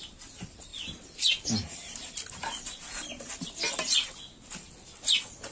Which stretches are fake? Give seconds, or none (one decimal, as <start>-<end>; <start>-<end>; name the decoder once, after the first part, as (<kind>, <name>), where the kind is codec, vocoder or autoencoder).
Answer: none